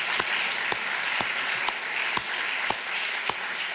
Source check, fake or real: real